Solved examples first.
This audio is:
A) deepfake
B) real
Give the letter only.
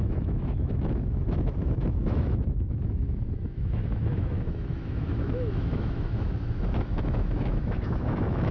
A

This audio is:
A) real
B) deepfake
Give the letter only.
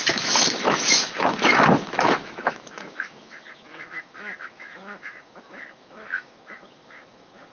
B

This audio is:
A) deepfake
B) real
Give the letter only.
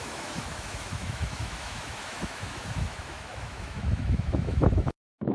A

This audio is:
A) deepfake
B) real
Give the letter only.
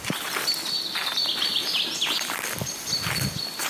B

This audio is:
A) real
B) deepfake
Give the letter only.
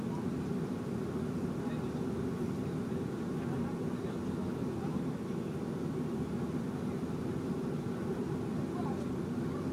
A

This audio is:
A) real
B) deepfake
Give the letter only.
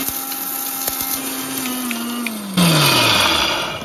A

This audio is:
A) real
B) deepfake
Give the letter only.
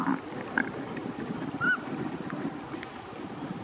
A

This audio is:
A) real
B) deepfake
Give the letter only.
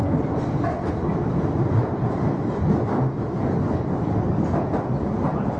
A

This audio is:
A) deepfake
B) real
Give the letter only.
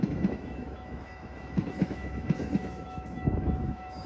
A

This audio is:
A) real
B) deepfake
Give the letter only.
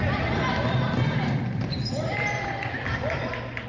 A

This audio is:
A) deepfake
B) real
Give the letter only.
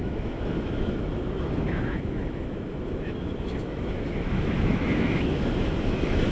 A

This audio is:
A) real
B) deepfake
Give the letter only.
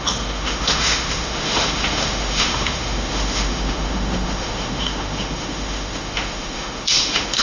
B